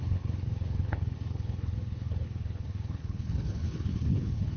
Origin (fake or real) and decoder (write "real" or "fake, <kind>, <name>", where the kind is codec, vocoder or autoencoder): fake, codec, HILCodec